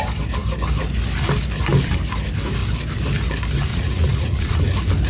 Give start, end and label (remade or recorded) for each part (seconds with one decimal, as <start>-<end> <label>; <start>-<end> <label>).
0.0-3.7 recorded; 3.7-4.6 remade; 4.6-5.1 recorded